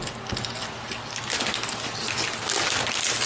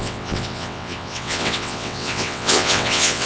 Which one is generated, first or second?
second